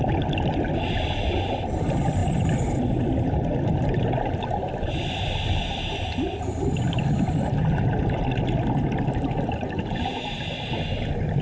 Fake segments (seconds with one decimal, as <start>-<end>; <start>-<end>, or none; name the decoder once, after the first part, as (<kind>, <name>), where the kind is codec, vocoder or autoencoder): none